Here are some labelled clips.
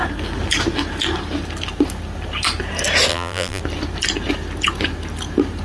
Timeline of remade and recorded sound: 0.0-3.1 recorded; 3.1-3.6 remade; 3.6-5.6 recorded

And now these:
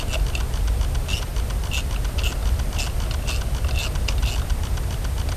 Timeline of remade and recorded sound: 0.0-5.4 recorded